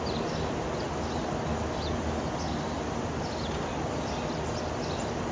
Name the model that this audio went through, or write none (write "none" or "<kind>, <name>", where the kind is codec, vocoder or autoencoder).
none